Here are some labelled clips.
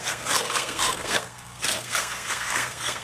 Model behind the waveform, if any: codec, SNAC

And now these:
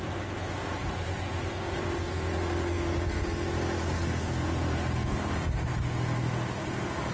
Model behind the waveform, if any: none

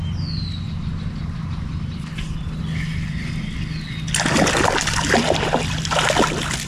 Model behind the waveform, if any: none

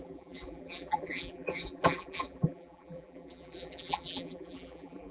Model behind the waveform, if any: vocoder, BigVGAN v2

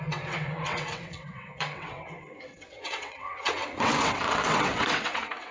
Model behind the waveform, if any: vocoder, WaveNeXt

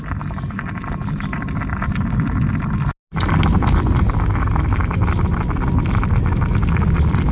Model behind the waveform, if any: none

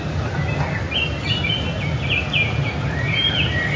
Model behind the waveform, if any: none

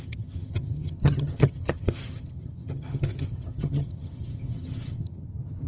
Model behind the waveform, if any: vocoder, HiFi-GAN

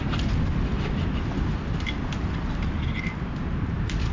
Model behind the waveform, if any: none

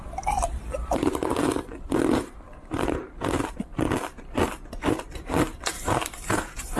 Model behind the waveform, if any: vocoder, BigVGAN v2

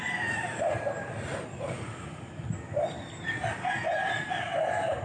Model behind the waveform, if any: none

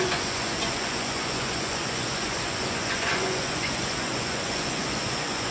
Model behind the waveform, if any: vocoder, Vocos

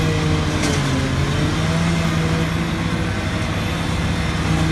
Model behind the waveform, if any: none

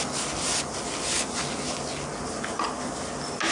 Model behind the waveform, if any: none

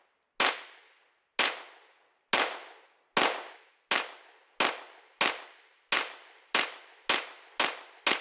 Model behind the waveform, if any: none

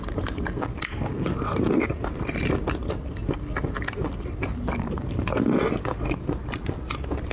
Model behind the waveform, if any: none